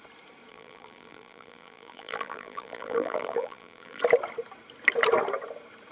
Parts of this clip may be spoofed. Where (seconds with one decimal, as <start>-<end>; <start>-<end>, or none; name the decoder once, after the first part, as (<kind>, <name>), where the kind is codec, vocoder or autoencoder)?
0.5-4.0 (vocoder, BigVGAN v2)